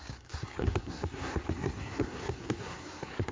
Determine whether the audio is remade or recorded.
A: remade